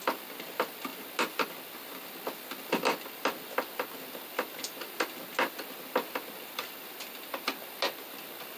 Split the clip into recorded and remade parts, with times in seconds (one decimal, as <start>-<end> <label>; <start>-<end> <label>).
0.0-8.6 recorded